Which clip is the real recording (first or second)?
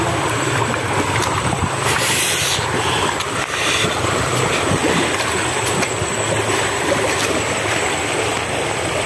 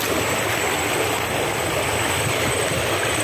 second